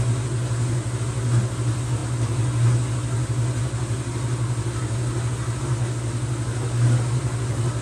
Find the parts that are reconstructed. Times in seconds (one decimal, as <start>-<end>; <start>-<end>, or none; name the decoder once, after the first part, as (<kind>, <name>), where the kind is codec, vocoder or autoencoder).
none